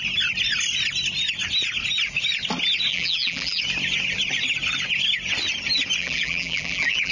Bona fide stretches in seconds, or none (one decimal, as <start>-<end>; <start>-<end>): 0.0-2.9; 3.6-6.0